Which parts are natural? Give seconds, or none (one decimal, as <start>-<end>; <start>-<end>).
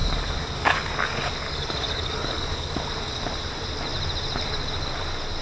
2.8-5.4